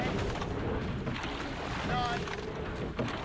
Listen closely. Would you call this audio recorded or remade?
recorded